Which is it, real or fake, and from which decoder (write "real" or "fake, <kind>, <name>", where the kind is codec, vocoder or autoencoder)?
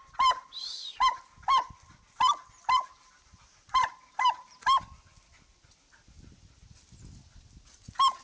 real